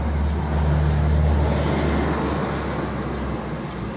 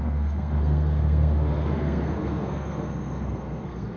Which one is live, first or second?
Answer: first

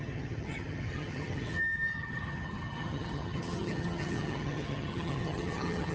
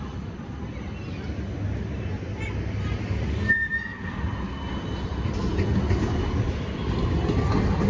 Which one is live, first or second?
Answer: second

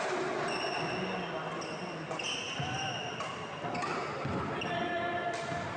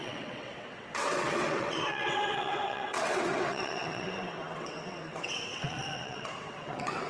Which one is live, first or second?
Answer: first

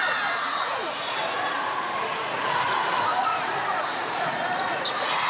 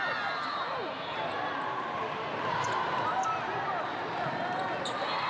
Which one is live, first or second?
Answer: second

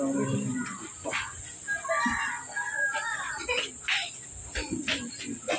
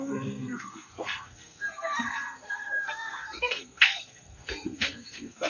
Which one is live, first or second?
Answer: first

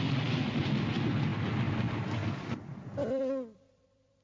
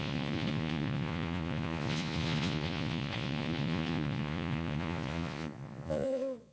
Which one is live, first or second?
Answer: first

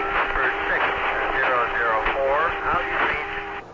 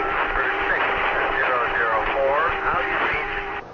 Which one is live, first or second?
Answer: first